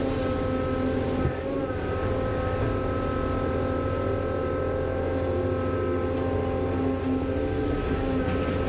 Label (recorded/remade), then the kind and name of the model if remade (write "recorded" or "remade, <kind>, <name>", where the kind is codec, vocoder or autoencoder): recorded